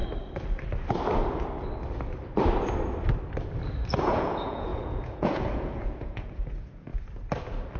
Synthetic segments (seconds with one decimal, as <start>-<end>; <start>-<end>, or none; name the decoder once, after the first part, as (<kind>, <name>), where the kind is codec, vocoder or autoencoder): 4.0-6.9 (vocoder, Vocos)